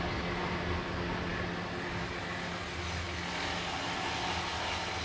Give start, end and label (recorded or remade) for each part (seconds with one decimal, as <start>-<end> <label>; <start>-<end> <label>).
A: 0.0-5.0 recorded